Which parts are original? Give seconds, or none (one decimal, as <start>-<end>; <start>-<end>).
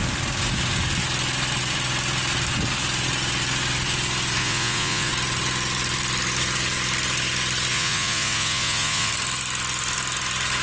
0.0-4.4; 5.1-7.7; 9.1-10.6